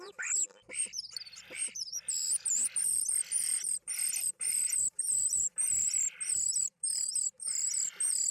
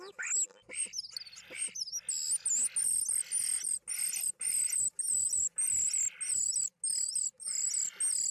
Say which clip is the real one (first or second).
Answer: second